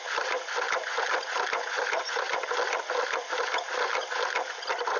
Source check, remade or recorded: recorded